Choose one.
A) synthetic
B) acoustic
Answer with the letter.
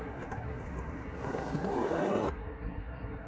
A